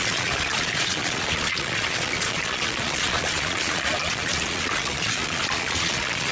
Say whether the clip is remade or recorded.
remade